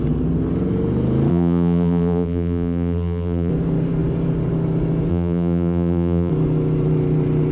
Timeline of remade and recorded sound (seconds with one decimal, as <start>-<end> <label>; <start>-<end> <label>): 0.0-1.3 recorded; 1.3-3.5 remade; 3.5-5.1 recorded; 5.1-6.3 remade; 6.3-7.5 recorded